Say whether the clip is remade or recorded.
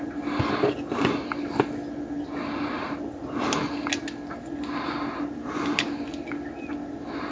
recorded